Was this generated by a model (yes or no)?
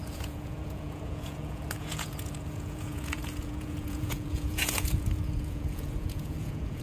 yes